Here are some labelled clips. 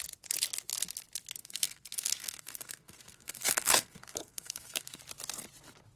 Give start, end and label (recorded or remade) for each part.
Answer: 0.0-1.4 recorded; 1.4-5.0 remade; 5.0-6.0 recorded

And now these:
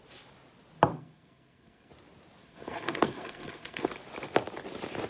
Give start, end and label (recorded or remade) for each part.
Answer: 0.0-0.9 recorded; 0.9-1.9 remade; 1.9-2.4 recorded; 2.4-3.9 remade; 3.9-5.1 recorded

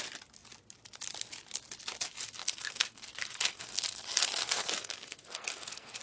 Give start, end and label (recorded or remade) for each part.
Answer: 0.0-2.4 recorded; 2.4-6.0 remade

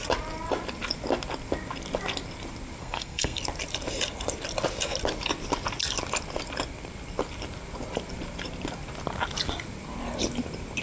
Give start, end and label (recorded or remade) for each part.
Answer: 0.0-2.8 recorded; 2.8-3.4 remade; 3.4-10.8 recorded

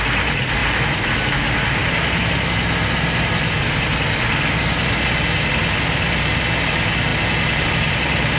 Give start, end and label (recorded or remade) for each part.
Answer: 0.0-8.4 recorded

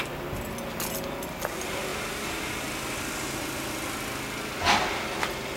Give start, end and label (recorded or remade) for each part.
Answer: 0.0-5.6 recorded

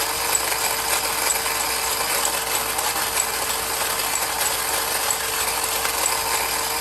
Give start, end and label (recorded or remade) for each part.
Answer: 0.0-6.8 recorded